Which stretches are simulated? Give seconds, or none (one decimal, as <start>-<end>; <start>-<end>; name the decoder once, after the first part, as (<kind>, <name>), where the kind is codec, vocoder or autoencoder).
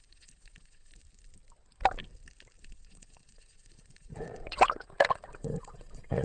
0.0-1.0 (vocoder, Vocos); 2.6-6.2